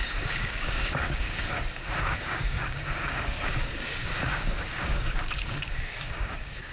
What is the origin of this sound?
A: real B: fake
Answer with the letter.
B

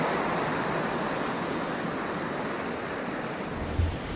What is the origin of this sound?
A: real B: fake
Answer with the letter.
A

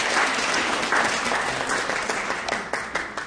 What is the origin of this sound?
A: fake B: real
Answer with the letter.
B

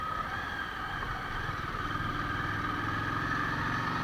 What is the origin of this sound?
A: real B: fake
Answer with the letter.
A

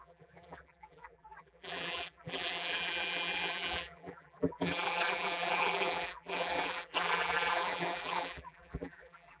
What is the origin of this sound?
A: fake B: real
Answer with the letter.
A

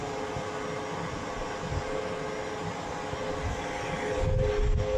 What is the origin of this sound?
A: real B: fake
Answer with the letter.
A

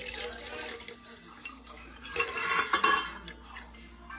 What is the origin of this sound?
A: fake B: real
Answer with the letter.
B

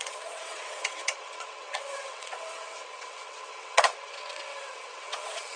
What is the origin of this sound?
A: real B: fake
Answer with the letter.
B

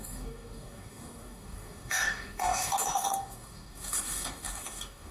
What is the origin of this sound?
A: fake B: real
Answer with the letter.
A